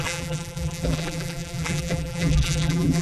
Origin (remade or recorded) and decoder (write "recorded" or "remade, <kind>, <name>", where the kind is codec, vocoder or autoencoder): remade, vocoder, BigVGAN v2